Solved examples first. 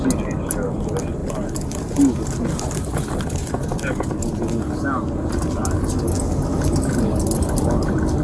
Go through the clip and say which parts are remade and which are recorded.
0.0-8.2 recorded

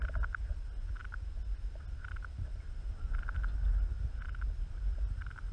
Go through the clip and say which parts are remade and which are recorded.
0.0-5.5 recorded